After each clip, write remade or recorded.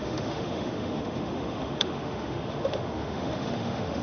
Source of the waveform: remade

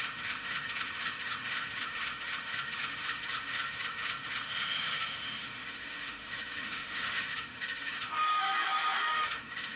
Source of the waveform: remade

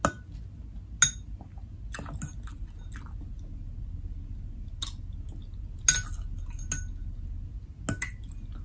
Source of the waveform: recorded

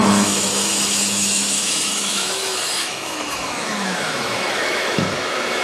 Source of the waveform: remade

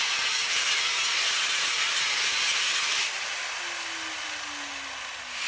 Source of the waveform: recorded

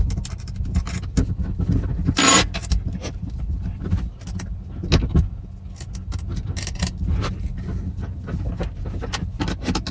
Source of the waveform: recorded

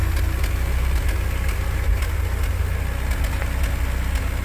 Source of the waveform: recorded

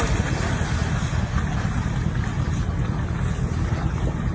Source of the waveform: recorded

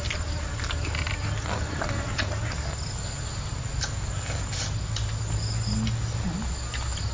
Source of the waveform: recorded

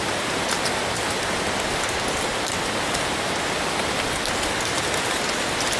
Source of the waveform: recorded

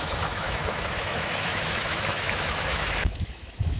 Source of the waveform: remade